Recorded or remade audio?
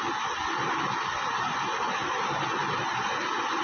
recorded